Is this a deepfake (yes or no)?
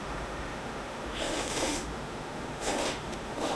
yes